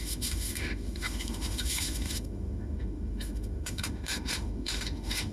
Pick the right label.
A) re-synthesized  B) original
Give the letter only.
A